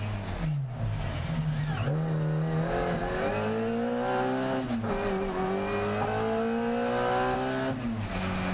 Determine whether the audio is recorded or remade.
recorded